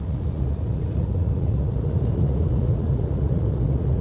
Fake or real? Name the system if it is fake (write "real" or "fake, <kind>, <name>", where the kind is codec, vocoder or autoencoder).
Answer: fake, vocoder, Vocos